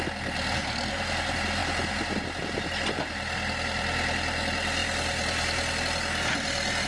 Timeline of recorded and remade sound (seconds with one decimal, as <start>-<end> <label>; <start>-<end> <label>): 0.0-6.9 recorded